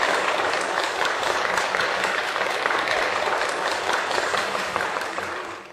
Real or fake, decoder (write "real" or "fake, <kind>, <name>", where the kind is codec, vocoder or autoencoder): fake, codec, DAC